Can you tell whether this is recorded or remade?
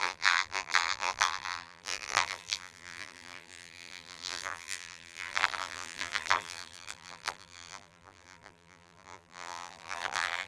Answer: remade